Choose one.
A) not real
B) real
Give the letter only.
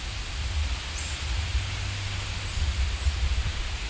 B